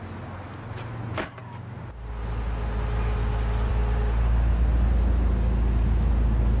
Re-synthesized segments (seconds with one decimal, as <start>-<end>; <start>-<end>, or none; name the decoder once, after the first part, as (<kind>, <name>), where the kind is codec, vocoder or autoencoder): none